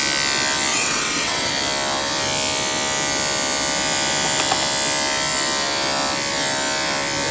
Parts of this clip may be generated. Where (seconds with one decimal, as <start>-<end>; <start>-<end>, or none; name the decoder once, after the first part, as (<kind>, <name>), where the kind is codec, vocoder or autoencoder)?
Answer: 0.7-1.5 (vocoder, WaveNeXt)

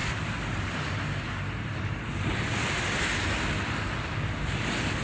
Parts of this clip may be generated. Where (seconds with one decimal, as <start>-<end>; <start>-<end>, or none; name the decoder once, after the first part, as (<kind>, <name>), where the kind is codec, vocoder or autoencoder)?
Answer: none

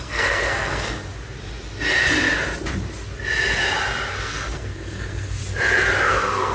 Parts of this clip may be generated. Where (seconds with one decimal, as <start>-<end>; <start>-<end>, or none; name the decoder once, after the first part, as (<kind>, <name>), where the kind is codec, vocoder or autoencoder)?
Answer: 0.0-1.0 (codec, SNAC); 4.1-5.4; 6.0-6.5

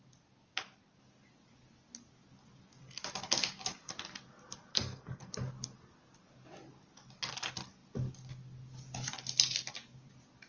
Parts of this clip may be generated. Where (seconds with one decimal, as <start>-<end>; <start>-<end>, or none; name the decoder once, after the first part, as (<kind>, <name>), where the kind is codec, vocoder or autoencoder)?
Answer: 4.7-5.3 (codec, SNAC)

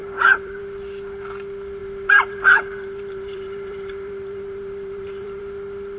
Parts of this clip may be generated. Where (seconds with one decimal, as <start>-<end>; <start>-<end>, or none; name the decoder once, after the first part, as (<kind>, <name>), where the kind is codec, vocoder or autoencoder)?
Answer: 0.0-0.6 (vocoder, BigVGAN v2); 1.8-5.4

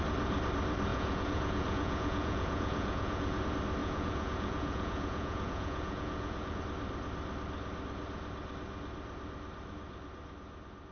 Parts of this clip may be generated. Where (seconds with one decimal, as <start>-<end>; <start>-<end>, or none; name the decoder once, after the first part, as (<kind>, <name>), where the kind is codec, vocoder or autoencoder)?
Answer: 0.9-3.4 (vocoder, Vocos); 3.8-6.6

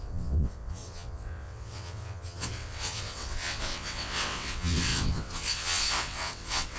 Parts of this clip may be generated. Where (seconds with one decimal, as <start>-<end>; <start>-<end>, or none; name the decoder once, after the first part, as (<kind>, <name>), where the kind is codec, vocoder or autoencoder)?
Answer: 0.0-6.8 (vocoder, WaveNeXt)